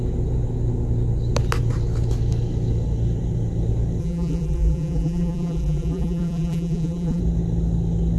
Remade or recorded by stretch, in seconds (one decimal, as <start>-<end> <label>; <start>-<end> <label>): 0.0-4.0 recorded; 4.0-7.2 remade; 7.2-8.2 recorded